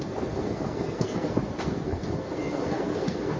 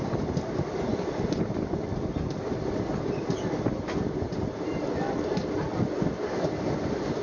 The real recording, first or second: second